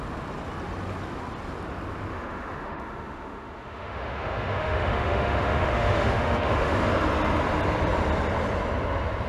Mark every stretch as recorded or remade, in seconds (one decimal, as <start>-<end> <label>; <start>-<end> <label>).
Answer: 0.0-2.1 recorded; 2.1-6.8 remade; 6.8-9.3 recorded